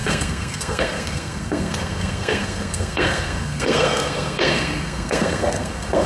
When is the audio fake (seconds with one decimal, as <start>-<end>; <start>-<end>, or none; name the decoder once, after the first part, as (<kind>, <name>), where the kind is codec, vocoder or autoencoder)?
0.0-6.1 (codec, SNAC)